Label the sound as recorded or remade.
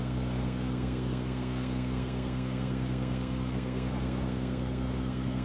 remade